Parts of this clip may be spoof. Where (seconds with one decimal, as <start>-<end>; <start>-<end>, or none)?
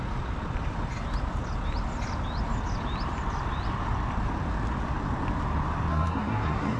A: 5.9-6.8